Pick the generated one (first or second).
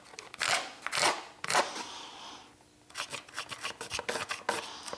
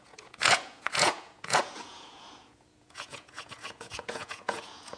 second